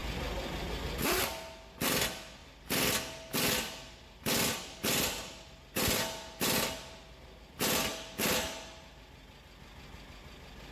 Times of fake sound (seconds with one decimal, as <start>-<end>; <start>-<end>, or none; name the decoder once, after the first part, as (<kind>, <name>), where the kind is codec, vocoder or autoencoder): none